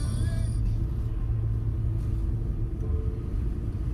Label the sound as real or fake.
real